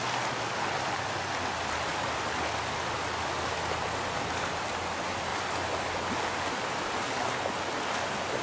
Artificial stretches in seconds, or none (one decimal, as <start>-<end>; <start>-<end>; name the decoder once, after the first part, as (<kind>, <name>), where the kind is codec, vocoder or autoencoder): none